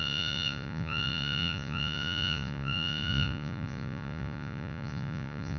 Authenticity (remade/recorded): remade